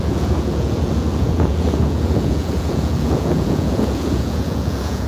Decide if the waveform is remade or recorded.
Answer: remade